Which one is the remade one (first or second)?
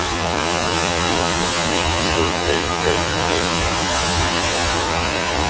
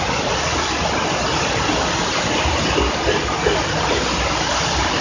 first